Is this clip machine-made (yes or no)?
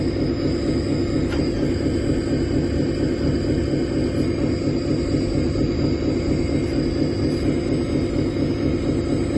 no